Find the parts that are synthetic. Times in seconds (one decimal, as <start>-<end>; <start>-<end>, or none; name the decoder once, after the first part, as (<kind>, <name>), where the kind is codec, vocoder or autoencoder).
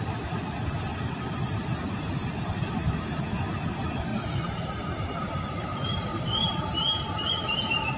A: 0.0-0.9 (vocoder, BigVGAN v2); 2.7-4.1; 4.6-8.0